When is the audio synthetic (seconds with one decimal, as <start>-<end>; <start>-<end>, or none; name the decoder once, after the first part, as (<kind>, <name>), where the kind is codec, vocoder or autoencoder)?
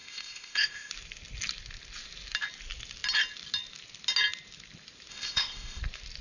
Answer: 0.0-0.9 (codec, ZipCodec); 5.1-5.8